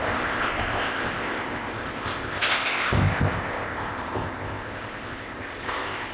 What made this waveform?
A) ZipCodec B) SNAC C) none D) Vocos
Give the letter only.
A